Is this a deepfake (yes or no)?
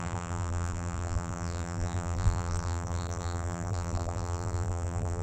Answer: yes